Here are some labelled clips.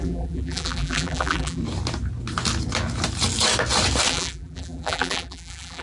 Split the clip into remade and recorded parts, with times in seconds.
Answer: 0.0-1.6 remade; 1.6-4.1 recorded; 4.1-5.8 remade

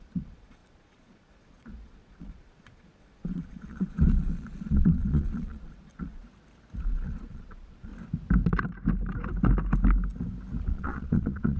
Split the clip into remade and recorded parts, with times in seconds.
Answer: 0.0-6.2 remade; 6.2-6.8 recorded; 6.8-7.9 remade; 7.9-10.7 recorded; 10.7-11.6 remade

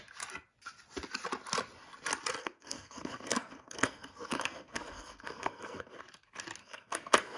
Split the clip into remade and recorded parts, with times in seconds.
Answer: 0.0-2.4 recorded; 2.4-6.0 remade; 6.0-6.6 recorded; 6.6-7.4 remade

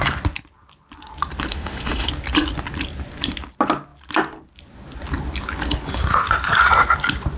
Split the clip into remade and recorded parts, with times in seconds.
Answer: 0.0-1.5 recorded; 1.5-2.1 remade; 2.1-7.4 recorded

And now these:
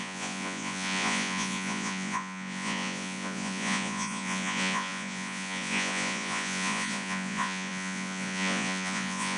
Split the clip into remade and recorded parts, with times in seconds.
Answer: 0.0-9.4 remade

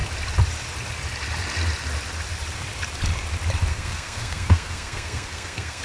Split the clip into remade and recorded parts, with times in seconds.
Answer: 0.0-3.7 recorded; 3.7-5.8 remade